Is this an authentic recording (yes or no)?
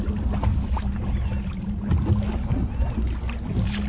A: yes